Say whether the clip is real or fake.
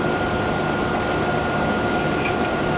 real